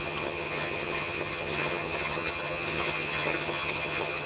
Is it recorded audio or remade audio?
remade